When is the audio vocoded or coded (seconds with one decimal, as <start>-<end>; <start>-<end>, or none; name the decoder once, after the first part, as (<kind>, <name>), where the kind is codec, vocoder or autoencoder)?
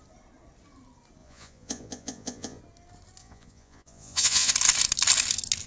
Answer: 1.2-2.6 (vocoder, Vocos); 3.2-4.5